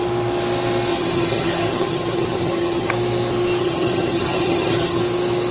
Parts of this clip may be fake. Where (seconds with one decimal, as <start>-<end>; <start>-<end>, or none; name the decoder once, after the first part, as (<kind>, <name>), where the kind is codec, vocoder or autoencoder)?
0.9-2.9 (vocoder, HiFi-GAN); 3.6-5.0